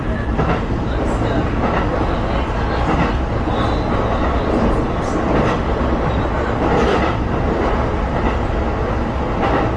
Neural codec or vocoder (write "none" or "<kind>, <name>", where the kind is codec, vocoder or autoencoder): none